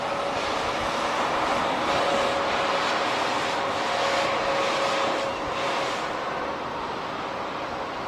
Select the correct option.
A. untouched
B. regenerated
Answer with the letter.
A